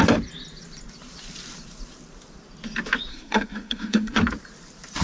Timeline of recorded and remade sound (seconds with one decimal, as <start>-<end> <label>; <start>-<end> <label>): 0.0-3.1 recorded; 3.1-4.2 remade; 4.2-5.0 recorded